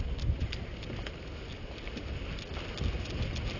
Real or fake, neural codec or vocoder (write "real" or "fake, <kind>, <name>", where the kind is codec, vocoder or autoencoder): real